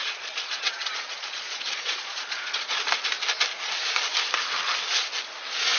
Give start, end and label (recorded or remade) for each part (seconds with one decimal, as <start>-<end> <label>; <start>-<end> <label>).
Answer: 0.0-2.8 remade; 2.8-5.8 recorded